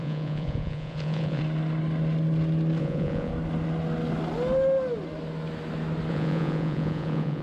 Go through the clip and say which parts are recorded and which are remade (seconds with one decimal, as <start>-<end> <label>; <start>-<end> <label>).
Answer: 0.0-1.4 remade; 1.4-2.8 recorded; 2.8-3.3 remade; 3.3-6.1 recorded; 6.1-7.4 remade